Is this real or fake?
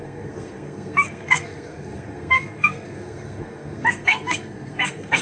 fake